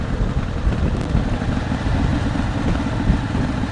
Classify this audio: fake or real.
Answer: real